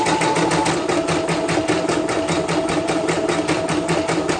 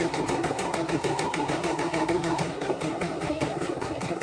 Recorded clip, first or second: first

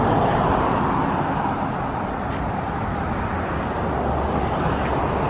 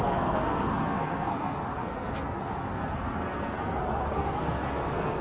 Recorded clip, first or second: first